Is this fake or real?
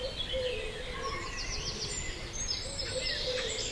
fake